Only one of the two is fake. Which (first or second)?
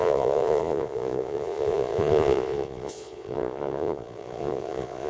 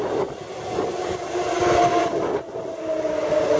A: first